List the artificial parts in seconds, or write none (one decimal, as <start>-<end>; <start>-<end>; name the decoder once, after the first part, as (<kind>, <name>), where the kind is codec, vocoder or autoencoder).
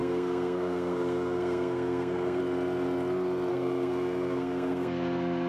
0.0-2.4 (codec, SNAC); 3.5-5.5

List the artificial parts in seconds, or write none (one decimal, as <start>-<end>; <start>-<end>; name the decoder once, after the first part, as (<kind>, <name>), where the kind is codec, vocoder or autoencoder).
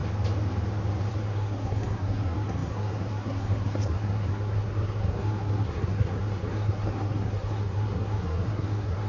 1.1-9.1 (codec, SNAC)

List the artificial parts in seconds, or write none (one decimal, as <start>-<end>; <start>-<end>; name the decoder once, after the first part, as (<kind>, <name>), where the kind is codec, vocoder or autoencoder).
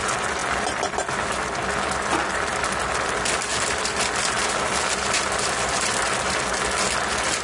none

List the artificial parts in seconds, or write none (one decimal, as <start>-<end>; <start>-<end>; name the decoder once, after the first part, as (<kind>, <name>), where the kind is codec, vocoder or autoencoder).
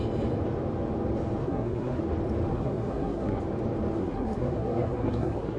1.4-2.0 (codec, SNAC); 2.5-3.4; 4.0-5.6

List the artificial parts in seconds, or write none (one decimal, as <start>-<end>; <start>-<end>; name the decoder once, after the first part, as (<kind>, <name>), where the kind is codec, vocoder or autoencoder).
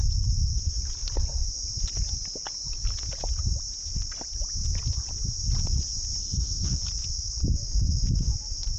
6.2-6.8 (codec, SNAC)